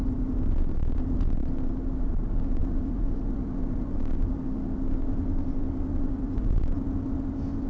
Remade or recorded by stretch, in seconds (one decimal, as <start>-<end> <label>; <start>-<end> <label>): 0.0-7.7 recorded